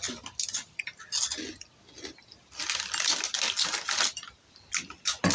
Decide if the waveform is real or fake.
real